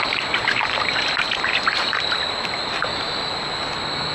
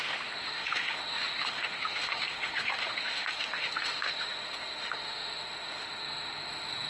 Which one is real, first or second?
first